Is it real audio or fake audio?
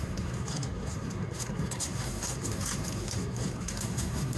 fake